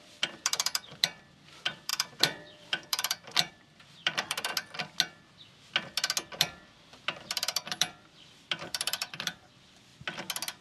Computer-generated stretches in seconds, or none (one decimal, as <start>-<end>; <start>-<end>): 0.0-4.5; 6.4-9.9